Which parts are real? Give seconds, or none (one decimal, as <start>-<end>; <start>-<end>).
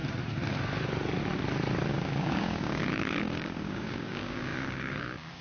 0.0-1.9